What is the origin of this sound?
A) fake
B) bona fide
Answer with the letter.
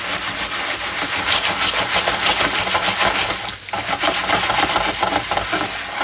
B